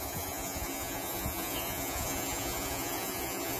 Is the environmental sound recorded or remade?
remade